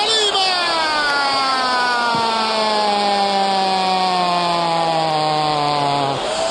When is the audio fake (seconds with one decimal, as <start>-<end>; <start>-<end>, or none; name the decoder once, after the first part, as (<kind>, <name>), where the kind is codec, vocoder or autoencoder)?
none